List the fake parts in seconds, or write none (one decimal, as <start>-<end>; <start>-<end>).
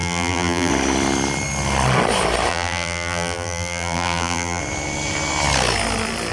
0.0-0.7; 2.5-4.6